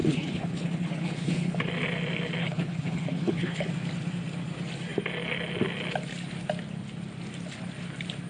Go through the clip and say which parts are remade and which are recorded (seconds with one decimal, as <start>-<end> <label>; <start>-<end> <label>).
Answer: 0.0-1.7 remade; 1.7-2.4 recorded; 2.4-3.7 remade; 3.7-8.3 recorded